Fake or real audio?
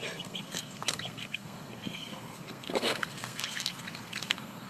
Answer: fake